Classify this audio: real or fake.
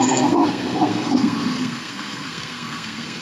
fake